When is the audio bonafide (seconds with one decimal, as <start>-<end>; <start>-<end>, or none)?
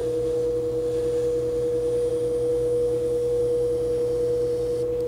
0.0-2.5; 3.4-5.1